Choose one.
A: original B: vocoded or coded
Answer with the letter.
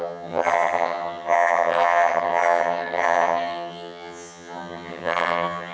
B